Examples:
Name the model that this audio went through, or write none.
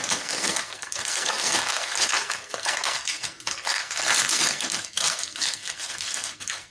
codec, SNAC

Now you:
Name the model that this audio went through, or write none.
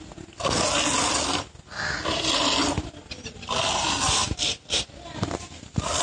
none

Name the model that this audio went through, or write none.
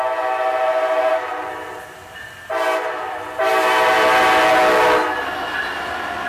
none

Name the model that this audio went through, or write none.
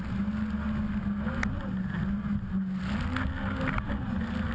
none